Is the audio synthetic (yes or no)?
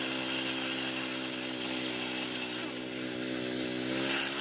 no